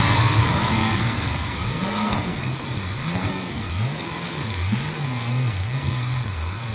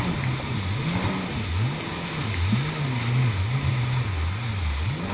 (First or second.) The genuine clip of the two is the second